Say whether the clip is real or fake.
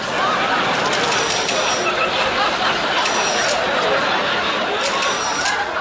real